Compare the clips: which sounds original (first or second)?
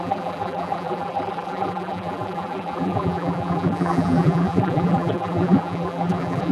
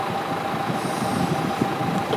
second